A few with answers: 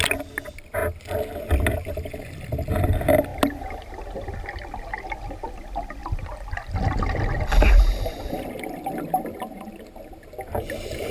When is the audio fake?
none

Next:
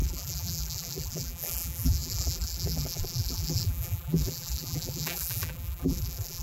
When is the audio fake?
0.0-6.4 (vocoder, BigVGAN v2)

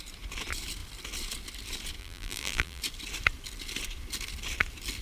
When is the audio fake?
2.0-2.8 (vocoder, BigVGAN v2)

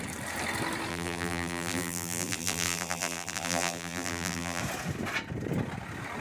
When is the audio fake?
0.9-4.6 (vocoder, BigVGAN v2)

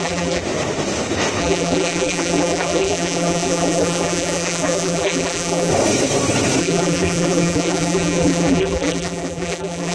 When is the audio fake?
0.0-0.4 (vocoder, BigVGAN v2); 1.4-5.7; 6.6-9.9